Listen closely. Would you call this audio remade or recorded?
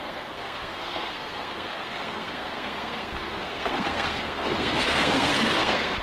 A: remade